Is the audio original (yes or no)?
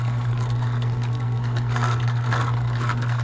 no